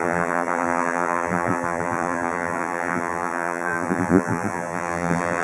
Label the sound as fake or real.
fake